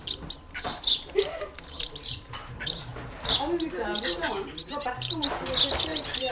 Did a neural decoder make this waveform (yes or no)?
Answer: yes